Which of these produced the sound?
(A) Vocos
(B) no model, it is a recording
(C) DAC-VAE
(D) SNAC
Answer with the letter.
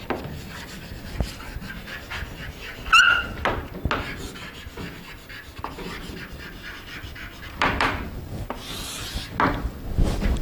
B